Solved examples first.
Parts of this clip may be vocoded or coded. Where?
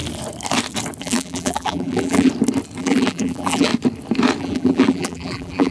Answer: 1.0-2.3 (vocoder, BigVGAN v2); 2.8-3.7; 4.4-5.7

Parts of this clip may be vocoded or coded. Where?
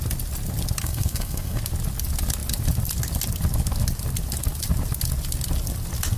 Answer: 0.8-1.6 (codec, SNAC)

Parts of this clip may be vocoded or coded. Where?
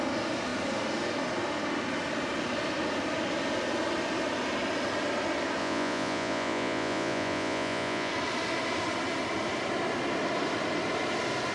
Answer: 5.6-8.1 (vocoder, Vocos)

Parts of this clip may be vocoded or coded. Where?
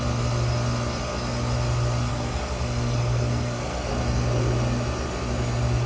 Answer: 2.1-3.9 (codec, SNAC)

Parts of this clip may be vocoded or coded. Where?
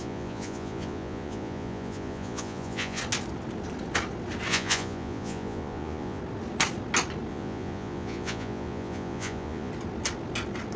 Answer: 0.0-3.0 (vocoder, Vocos); 4.5-6.2; 7.3-9.7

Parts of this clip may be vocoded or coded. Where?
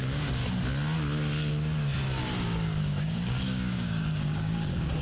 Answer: 0.0-0.4 (codec, DAC); 2.2-5.0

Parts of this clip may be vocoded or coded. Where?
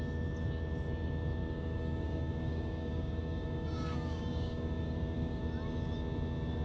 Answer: 1.4-5.4 (codec, DAC)